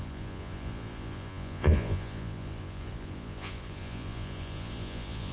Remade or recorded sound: remade